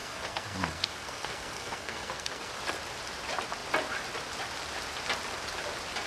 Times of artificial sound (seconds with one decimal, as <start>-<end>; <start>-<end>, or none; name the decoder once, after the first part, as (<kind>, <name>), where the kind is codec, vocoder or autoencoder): 0.0-2.5 (codec, SNAC)